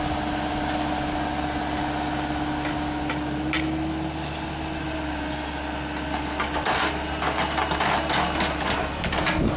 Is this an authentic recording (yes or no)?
yes